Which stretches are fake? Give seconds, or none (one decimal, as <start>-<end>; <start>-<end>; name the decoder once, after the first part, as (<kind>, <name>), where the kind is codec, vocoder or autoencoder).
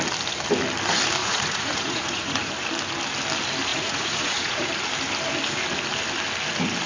1.2-2.5 (vocoder, Vocos); 3.7-4.7